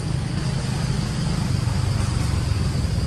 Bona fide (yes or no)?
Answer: yes